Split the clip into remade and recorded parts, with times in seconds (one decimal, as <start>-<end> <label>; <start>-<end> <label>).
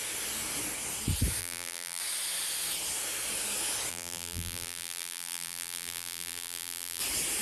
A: 0.0-1.4 recorded; 1.4-2.0 remade; 2.0-3.9 recorded; 3.9-7.0 remade; 7.0-7.4 recorded